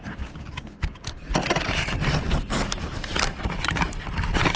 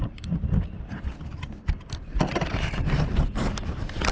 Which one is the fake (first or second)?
second